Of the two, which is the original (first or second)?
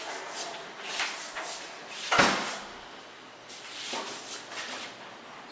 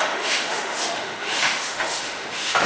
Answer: first